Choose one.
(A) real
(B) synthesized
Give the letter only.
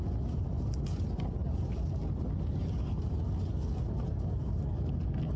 A